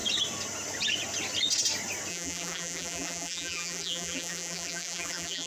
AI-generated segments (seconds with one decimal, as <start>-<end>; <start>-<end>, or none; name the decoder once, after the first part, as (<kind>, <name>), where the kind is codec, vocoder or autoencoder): 2.1-5.5 (vocoder, BigVGAN v2)